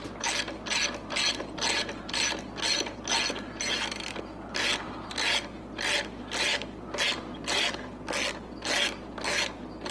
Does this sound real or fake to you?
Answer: real